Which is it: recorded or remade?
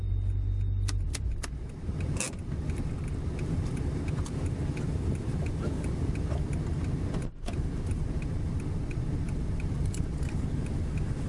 recorded